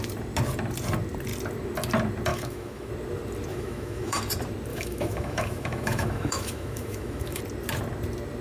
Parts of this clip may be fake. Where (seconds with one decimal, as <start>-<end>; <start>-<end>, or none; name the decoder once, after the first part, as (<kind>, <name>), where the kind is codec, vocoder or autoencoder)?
2.3-2.9 (autoencoder, DAC-VAE); 3.5-4.2; 4.7-7.4